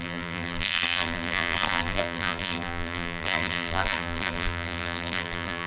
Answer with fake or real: fake